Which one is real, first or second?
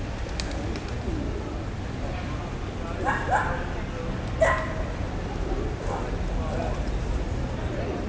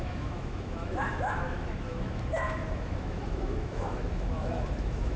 first